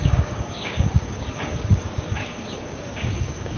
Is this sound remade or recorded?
remade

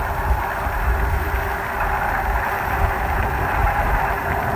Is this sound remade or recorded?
recorded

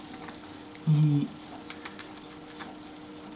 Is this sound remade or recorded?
recorded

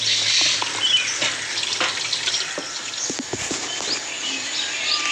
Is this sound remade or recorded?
recorded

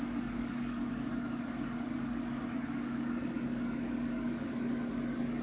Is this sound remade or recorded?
remade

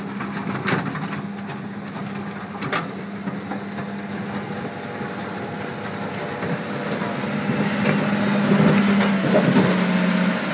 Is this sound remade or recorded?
recorded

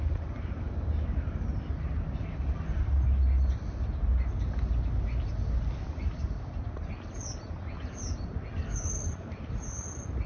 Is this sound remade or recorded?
recorded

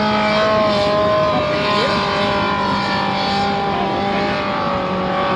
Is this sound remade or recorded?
recorded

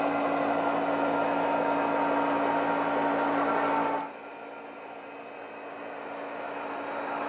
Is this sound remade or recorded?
recorded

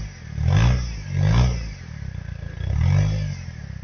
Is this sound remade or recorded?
recorded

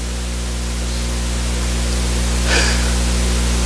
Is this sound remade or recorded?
recorded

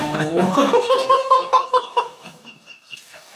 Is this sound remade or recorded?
remade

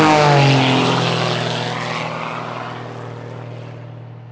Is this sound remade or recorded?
recorded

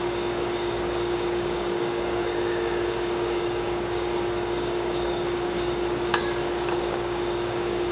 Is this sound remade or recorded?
remade